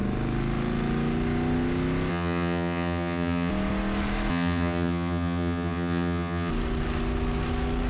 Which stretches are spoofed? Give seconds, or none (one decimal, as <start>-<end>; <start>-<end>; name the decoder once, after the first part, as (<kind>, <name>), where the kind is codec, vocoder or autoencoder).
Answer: 2.1-3.5 (vocoder, HiFi-GAN); 4.3-6.5